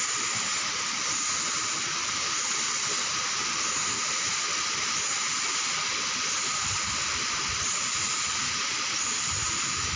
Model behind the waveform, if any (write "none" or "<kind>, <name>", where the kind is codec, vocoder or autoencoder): vocoder, BigVGAN v2